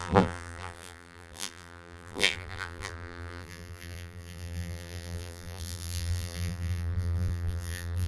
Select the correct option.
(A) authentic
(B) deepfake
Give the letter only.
B